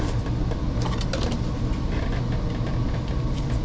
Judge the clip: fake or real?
real